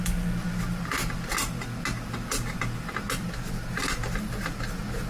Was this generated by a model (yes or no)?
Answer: no